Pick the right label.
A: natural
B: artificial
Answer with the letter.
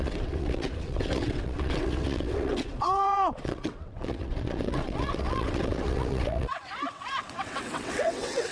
B